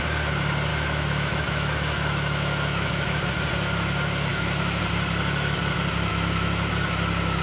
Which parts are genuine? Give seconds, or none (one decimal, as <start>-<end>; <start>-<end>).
0.0-0.7; 3.3-4.3; 4.8-6.1; 6.7-7.4